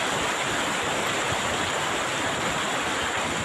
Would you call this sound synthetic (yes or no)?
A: no